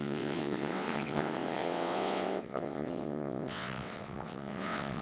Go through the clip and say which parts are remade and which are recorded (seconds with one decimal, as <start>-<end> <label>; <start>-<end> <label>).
0.0-5.0 remade